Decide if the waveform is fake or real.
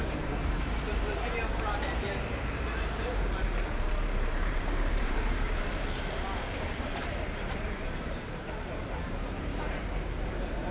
fake